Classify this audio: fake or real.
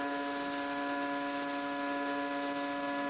real